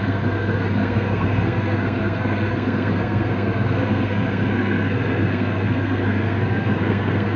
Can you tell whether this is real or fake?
fake